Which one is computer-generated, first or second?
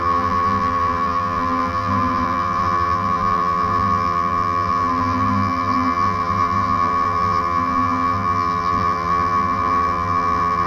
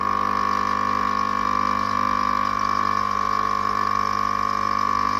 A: first